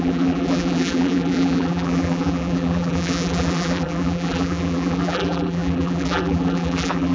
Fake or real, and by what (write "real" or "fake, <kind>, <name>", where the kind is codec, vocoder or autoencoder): fake, vocoder, BigVGAN v2